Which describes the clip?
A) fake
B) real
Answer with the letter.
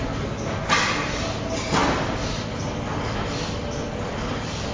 B